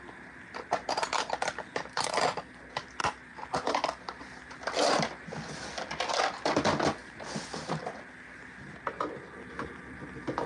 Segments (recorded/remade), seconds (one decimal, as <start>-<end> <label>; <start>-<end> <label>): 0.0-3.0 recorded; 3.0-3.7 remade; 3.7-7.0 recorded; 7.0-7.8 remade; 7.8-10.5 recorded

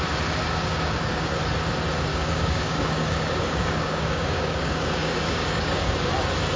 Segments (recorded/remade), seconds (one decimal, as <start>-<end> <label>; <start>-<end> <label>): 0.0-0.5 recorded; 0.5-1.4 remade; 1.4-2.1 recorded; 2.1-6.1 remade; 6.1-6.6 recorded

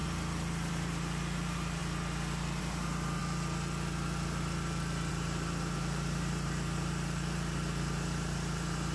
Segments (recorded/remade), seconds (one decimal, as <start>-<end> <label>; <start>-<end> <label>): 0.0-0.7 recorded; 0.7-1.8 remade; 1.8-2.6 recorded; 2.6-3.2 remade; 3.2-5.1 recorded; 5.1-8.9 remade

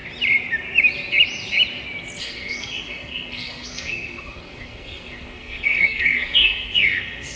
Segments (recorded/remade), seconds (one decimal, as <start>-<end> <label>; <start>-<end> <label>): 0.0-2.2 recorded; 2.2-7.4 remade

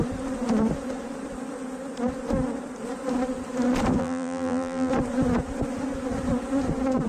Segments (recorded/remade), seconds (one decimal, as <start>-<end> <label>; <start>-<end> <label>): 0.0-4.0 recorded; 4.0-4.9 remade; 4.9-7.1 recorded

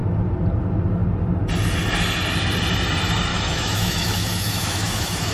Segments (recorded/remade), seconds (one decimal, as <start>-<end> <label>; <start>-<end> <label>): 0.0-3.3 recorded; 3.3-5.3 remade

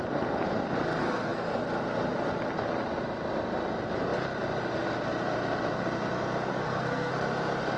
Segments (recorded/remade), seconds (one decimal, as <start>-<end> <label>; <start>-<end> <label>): 0.0-1.0 recorded; 1.0-1.6 remade; 1.6-6.5 recorded; 6.5-7.1 remade; 7.1-7.8 recorded

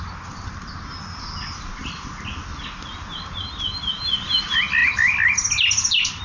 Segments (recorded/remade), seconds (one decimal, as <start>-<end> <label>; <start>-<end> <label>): 0.0-6.2 recorded